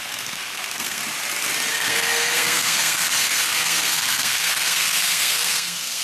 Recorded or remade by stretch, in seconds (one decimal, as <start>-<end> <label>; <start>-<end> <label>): 0.0-1.0 remade; 1.0-1.7 recorded; 1.7-6.0 remade